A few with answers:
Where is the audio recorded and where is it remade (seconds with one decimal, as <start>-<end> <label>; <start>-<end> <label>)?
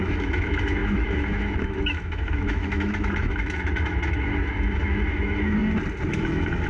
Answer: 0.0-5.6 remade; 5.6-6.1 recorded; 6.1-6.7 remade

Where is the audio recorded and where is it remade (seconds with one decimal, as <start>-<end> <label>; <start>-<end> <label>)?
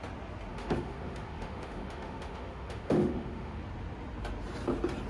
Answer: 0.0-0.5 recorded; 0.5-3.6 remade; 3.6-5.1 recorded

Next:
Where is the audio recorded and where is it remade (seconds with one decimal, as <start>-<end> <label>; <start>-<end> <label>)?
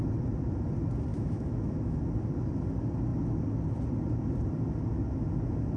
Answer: 0.0-1.1 recorded; 1.1-2.0 remade; 2.0-5.8 recorded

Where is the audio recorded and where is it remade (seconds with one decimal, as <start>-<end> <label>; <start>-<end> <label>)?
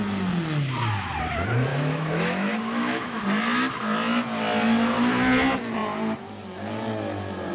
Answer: 0.0-1.7 recorded; 1.7-3.2 remade; 3.2-7.5 recorded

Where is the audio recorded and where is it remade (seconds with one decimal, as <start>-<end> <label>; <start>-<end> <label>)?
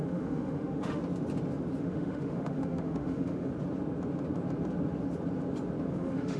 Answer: 0.0-1.0 remade; 1.0-1.8 recorded; 1.8-3.5 remade; 3.5-5.9 recorded; 5.9-6.4 remade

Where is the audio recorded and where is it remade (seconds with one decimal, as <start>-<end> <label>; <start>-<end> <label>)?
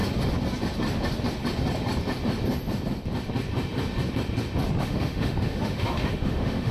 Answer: 0.0-4.8 recorded; 4.8-6.7 remade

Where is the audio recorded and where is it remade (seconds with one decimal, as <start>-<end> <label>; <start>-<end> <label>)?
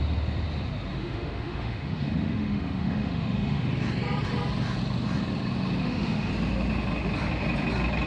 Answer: 0.0-0.9 recorded; 0.9-3.7 remade; 3.7-5.8 recorded; 5.8-6.3 remade; 6.3-8.1 recorded